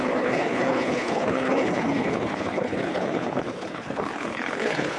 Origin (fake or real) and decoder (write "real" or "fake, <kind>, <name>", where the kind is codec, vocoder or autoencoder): fake, codec, HILCodec